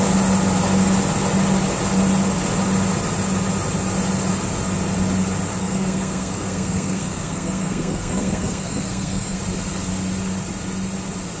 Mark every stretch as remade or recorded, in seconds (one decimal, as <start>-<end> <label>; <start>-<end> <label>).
0.0-5.6 recorded; 5.6-9.4 remade; 9.4-11.4 recorded